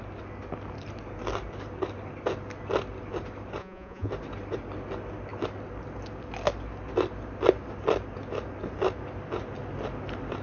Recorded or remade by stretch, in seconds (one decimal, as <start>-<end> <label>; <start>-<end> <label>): 0.0-3.6 recorded; 3.6-4.1 remade; 4.1-10.4 recorded

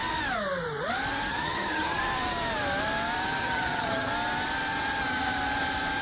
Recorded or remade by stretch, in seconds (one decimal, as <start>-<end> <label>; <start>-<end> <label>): 0.0-1.3 recorded; 1.3-2.0 remade; 2.0-3.4 recorded; 3.4-4.1 remade; 4.1-6.0 recorded

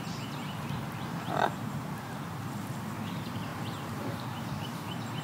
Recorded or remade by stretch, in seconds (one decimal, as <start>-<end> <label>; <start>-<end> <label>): 0.0-2.2 remade; 2.2-3.0 recorded; 3.0-3.5 remade; 3.5-4.1 recorded; 4.1-5.2 remade

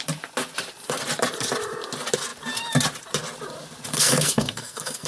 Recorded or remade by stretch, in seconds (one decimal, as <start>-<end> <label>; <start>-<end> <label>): 0.0-3.9 recorded; 3.9-5.1 remade

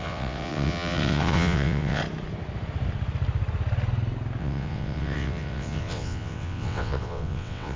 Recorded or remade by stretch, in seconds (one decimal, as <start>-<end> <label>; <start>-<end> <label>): 0.0-2.0 remade; 2.0-4.4 recorded; 4.4-7.8 remade

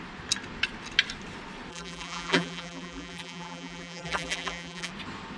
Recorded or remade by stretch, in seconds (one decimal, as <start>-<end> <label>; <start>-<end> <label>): 0.0-1.7 recorded; 1.7-4.9 remade; 4.9-5.4 recorded

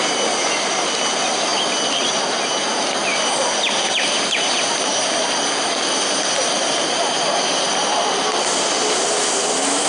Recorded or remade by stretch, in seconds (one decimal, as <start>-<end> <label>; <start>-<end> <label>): 0.0-3.1 recorded; 3.1-3.7 remade; 3.7-9.9 recorded